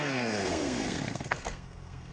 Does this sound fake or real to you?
fake